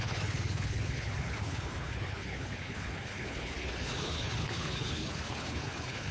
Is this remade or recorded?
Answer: remade